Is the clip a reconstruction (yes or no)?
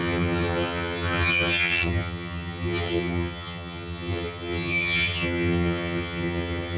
yes